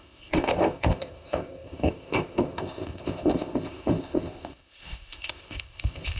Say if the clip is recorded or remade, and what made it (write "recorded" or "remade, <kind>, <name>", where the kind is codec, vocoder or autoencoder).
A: remade, codec, ZipCodec